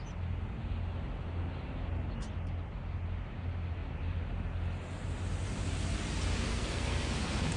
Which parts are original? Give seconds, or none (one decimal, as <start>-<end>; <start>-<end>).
0.0-6.5